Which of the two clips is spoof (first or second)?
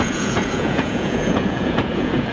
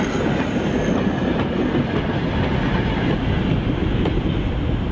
first